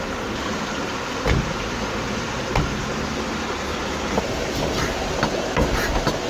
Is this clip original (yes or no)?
yes